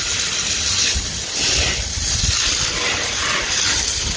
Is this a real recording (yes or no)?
yes